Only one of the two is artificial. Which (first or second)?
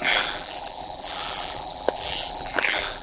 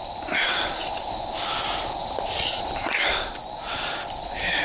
first